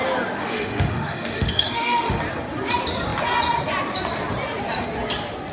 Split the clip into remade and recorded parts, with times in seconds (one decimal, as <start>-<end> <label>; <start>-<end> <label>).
0.0-0.4 recorded; 0.4-2.2 remade; 2.2-5.5 recorded